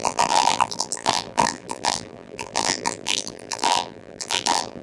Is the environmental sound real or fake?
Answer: fake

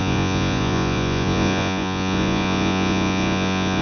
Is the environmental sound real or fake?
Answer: fake